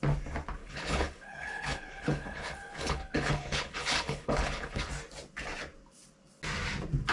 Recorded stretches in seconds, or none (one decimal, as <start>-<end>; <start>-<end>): 0.0-0.6; 4.9-7.1